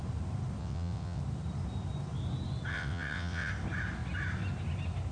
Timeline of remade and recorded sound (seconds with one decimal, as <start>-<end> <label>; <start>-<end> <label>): 0.0-0.6 recorded; 0.6-1.2 remade; 1.2-2.7 recorded; 2.7-3.5 remade; 3.5-5.1 recorded